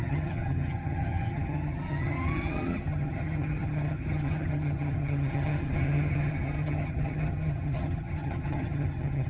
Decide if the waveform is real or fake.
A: fake